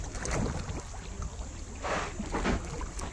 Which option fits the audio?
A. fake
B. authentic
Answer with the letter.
B